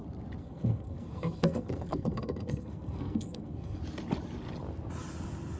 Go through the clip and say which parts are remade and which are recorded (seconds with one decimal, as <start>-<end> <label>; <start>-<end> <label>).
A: 0.0-0.4 recorded; 0.4-3.8 remade; 3.8-5.6 recorded